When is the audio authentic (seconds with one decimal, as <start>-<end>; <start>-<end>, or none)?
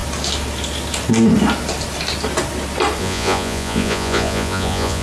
0.0-3.0